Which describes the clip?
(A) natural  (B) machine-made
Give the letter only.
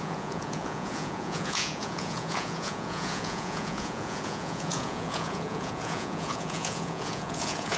B